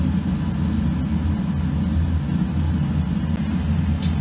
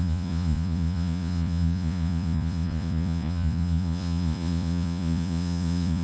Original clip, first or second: first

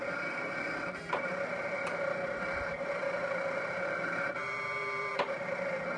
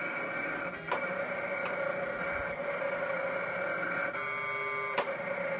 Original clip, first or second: second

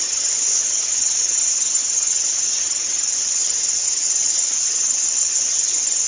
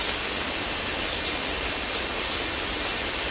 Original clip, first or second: second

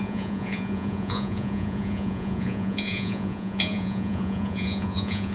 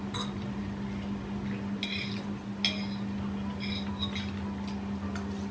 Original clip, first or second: second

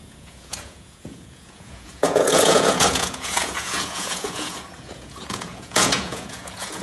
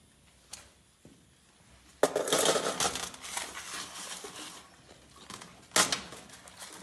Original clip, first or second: second